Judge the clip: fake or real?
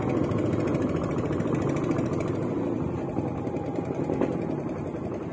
real